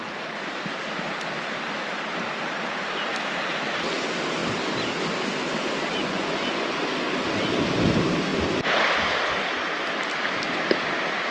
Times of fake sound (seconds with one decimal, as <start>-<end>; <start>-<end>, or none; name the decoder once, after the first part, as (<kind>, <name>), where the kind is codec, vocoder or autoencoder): 6.0-6.8 (vocoder, Vocos)